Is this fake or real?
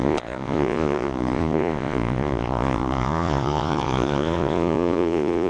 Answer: fake